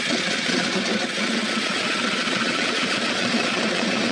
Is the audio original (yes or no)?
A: no